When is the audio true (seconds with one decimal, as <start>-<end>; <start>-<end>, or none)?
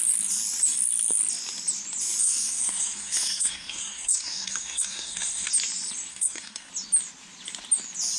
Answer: 0.0-2.2; 5.5-6.1; 6.7-8.2